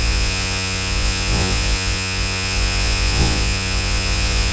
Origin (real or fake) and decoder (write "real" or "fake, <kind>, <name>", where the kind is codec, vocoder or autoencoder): fake, vocoder, Vocos